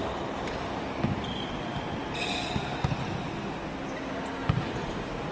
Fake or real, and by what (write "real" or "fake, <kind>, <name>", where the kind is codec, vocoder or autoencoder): real